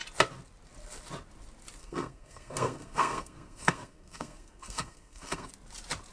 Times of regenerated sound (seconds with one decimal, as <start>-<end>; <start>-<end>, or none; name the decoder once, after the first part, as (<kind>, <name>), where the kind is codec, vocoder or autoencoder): 1.8-5.5 (codec, SNAC)